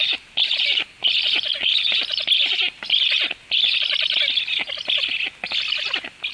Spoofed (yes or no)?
no